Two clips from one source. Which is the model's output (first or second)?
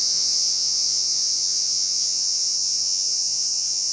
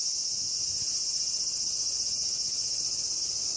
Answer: first